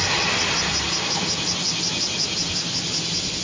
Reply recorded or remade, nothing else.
recorded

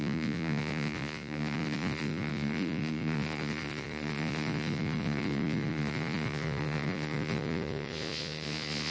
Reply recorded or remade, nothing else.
remade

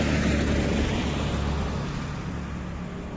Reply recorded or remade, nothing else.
recorded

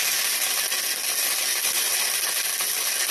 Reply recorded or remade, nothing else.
recorded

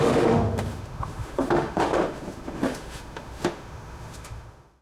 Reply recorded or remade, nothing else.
remade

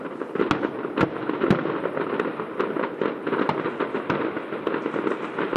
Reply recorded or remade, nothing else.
recorded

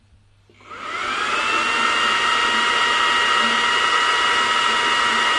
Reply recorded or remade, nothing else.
recorded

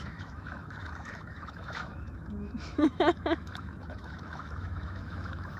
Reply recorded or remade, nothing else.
remade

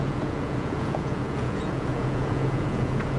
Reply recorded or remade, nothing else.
remade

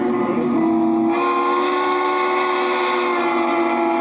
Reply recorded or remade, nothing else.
recorded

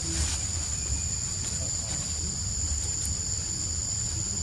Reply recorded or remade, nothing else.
recorded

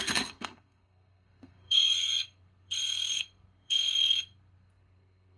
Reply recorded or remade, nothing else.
remade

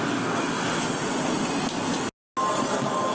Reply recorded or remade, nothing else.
recorded